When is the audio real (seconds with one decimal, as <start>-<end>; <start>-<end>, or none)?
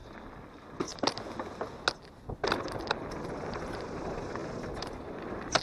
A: 0.0-0.5; 0.9-3.5